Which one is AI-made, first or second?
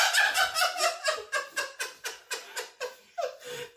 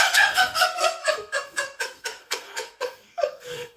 second